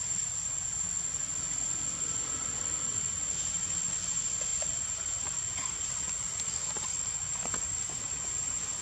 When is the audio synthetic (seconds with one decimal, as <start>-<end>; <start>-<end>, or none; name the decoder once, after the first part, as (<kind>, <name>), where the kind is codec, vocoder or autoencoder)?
none